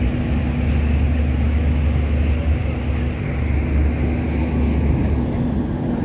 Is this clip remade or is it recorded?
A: recorded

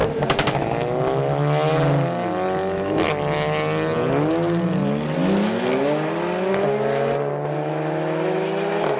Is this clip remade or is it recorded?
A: recorded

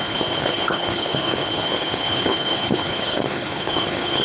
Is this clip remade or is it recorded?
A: remade